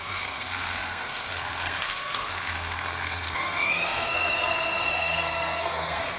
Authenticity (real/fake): fake